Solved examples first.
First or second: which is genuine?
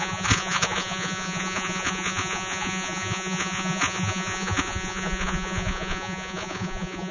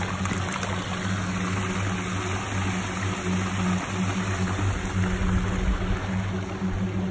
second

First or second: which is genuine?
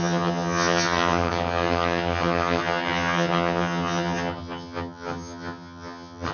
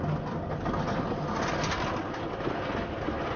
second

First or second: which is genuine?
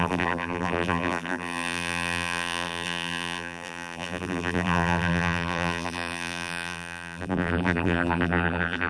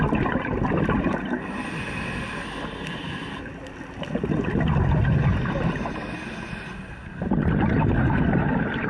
second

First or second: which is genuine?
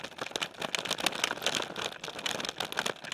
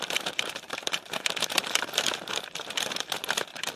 first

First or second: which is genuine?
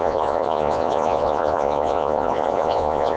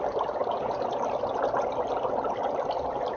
second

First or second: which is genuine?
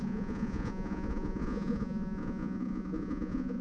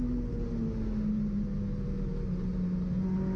second